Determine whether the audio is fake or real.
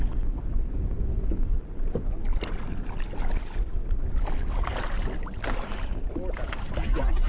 real